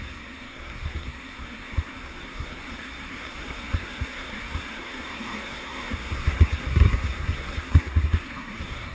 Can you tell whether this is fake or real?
fake